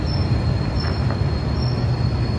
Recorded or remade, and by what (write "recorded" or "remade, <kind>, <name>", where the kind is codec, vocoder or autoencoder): recorded